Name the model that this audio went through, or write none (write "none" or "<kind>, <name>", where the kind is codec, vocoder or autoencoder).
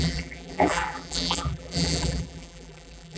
vocoder, BigVGAN v2